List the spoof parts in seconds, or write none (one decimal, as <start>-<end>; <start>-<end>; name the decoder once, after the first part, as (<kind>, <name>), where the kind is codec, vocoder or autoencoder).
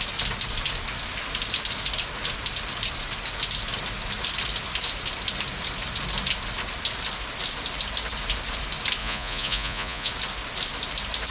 9.0-10.1 (vocoder, Vocos)